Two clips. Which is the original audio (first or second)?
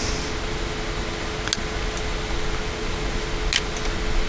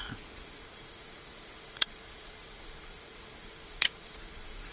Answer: first